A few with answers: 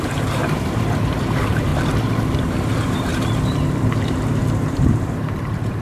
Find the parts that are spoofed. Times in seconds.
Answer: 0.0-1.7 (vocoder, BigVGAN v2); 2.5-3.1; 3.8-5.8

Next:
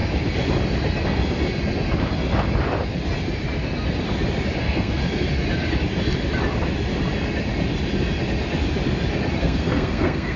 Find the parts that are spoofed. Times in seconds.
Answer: 4.6-5.0 (codec, SNAC); 9.4-10.4

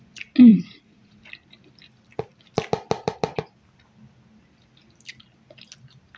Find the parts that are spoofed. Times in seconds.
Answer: 0.5-1.2 (vocoder, Vocos)

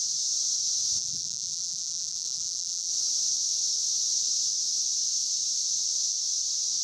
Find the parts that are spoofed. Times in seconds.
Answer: 1.0-2.9 (vocoder, BigVGAN v2)

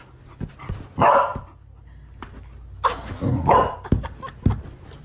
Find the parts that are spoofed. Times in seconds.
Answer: none

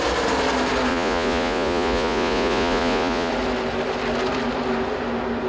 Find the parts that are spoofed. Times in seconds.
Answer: 0.9-3.3 (vocoder, Vocos)